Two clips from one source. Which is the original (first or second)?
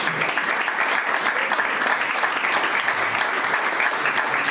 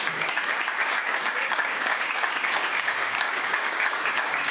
first